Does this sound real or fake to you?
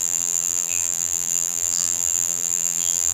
fake